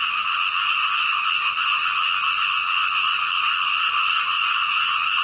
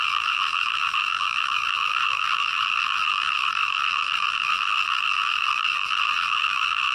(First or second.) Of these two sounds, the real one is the first